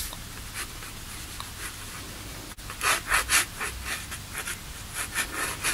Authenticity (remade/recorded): recorded